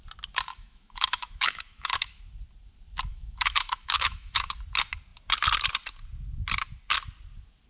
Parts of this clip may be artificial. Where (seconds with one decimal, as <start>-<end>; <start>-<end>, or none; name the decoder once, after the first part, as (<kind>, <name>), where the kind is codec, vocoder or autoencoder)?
0.5-2.2 (autoencoder, DAC-VAE); 3.1-4.5